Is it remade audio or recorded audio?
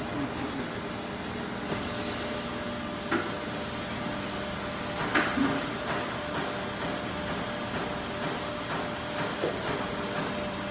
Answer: recorded